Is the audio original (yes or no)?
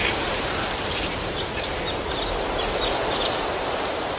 yes